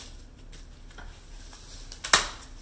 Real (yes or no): yes